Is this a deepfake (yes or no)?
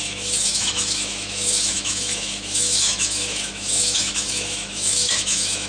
yes